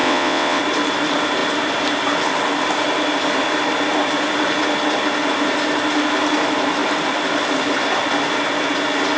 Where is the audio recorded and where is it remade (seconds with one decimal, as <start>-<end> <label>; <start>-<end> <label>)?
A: 0.0-0.6 remade; 0.6-9.2 recorded